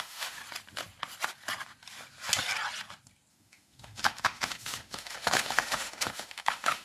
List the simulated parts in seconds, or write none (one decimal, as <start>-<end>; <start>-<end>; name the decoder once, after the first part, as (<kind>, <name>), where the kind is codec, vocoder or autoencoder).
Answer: 0.0-0.4 (autoencoder, DAC-VAE); 3.3-6.8